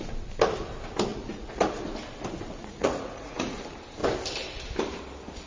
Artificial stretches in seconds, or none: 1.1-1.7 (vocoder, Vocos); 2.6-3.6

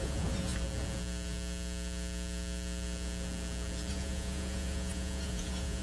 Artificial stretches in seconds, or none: 0.0-0.5 (vocoder, Vocos); 3.9-5.8

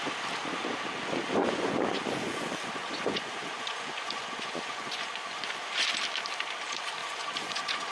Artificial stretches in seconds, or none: 1.4-5.8 (vocoder, Vocos); 7.0-7.9